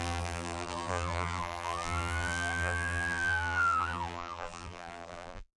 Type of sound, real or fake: fake